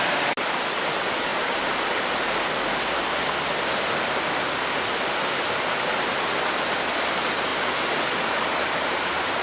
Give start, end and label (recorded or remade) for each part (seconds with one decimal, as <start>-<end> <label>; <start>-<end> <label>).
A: 0.0-9.4 recorded